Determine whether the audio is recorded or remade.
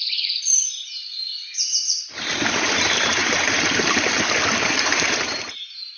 remade